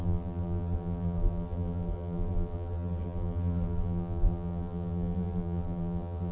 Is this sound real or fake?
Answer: fake